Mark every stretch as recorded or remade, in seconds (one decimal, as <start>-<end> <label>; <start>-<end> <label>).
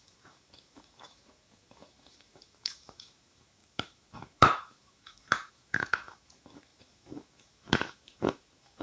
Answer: 0.0-8.8 remade